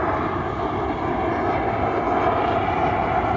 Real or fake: real